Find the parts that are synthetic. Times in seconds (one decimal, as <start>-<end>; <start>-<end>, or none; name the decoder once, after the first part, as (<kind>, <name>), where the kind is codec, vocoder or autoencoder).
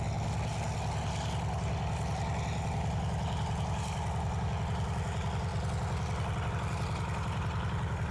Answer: none